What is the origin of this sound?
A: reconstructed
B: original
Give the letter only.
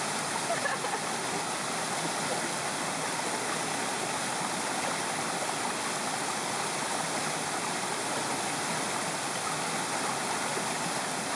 B